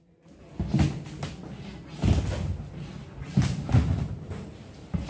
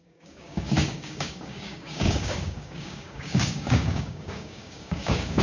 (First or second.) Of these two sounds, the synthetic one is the second